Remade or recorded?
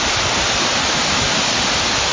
recorded